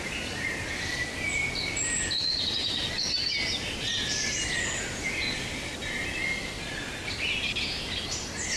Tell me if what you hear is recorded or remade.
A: recorded